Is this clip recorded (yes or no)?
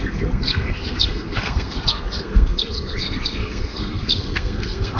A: no